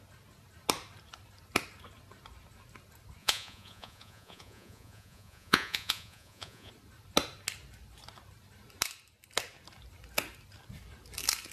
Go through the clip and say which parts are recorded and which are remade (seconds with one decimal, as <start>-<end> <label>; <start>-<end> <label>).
0.0-3.2 recorded; 3.2-6.7 remade; 6.7-11.5 recorded